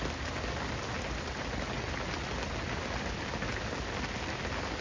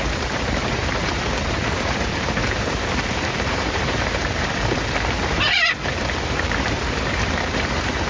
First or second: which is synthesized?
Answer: second